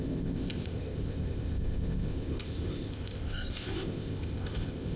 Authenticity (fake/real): fake